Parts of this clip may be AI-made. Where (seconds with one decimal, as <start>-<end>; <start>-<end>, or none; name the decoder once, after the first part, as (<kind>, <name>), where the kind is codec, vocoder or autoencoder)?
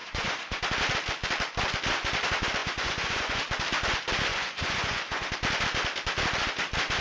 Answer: 0.0-0.6 (vocoder, Vocos); 2.6-3.4; 4.3-5.3